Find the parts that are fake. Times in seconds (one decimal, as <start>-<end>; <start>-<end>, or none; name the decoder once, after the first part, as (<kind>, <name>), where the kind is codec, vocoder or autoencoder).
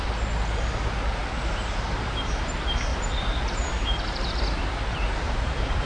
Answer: 2.9-4.3 (vocoder, BigVGAN v2)